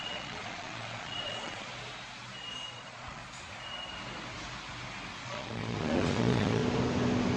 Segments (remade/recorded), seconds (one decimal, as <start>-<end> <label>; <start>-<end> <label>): 0.0-1.7 remade; 1.7-2.7 recorded; 2.7-3.2 remade; 3.2-5.2 recorded; 5.2-6.6 remade; 6.6-7.4 recorded